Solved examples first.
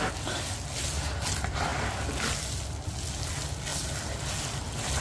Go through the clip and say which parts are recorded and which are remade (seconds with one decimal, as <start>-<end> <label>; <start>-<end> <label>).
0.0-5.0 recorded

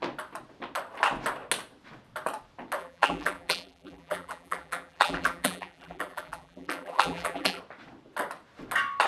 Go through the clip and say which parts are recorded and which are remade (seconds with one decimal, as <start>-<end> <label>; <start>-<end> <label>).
0.0-2.8 recorded; 2.8-7.6 remade; 7.6-9.1 recorded

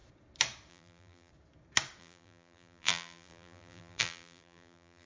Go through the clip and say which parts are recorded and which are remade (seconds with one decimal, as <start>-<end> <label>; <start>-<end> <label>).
0.0-0.7 recorded; 0.7-1.3 remade; 1.3-2.0 recorded; 2.0-5.1 remade